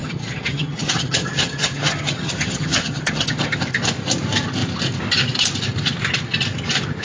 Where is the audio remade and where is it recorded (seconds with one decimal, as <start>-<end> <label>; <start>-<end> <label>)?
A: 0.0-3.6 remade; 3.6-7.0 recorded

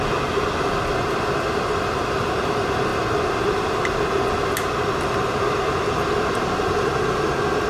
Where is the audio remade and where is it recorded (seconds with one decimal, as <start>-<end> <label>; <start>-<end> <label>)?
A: 0.0-7.7 recorded

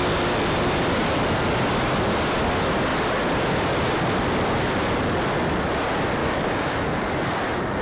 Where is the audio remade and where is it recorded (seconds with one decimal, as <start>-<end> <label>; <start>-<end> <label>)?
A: 0.0-6.2 recorded; 6.2-6.8 remade; 6.8-7.8 recorded

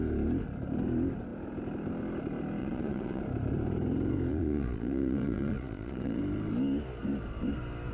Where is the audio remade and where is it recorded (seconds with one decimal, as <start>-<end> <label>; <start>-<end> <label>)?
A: 0.0-2.6 recorded; 2.6-3.2 remade; 3.2-4.3 recorded; 4.3-6.2 remade; 6.2-7.9 recorded

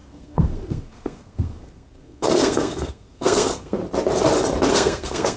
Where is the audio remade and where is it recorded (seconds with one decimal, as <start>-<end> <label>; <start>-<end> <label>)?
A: 0.0-3.8 remade; 3.8-4.7 recorded; 4.7-5.4 remade

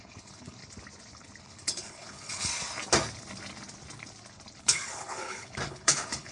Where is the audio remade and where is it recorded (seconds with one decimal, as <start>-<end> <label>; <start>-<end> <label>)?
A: 0.0-0.6 remade; 0.6-1.4 recorded; 1.4-2.5 remade; 2.5-4.6 recorded; 4.6-6.3 remade

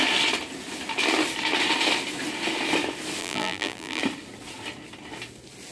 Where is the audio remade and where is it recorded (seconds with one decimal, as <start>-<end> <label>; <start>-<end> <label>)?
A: 0.0-3.2 recorded; 3.2-4.0 remade; 4.0-5.7 recorded